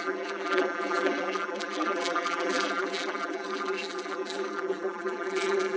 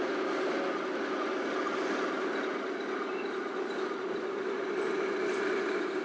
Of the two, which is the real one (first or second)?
second